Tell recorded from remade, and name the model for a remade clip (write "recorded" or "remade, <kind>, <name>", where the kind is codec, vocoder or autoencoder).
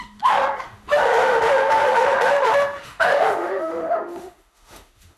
remade, autoencoder, DAC-VAE